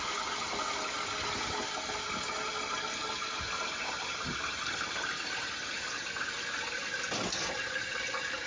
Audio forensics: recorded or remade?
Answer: recorded